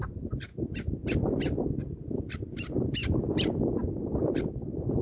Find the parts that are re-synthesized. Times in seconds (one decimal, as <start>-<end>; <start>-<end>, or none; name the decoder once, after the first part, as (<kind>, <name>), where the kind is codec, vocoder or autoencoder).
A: none